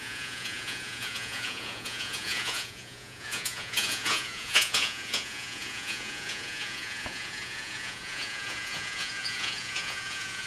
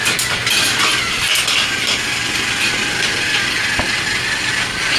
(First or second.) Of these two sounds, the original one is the second